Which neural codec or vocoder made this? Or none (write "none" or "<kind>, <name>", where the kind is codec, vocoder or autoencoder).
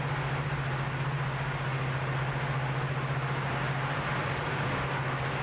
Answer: none